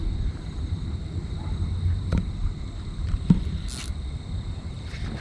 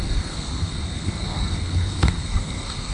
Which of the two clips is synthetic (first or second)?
second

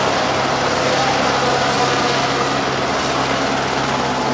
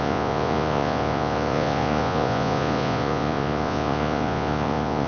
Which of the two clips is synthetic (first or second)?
second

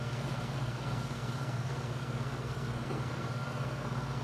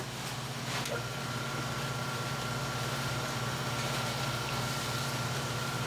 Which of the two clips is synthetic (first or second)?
first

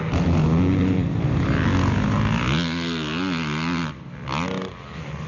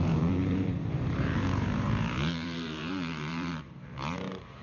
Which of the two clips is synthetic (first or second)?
second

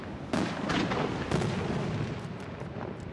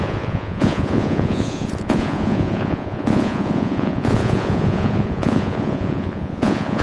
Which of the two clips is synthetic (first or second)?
second